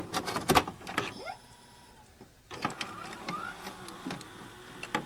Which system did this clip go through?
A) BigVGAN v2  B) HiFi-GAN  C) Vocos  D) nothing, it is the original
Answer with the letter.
D